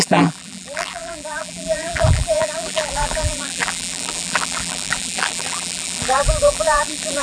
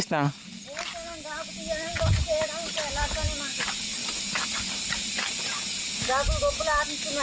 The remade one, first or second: first